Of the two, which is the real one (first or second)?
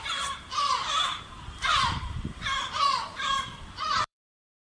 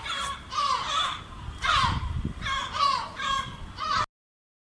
second